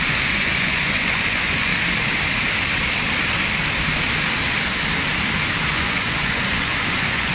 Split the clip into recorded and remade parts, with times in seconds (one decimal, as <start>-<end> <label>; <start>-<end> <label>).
0.0-1.7 remade; 1.7-5.7 recorded; 5.7-7.3 remade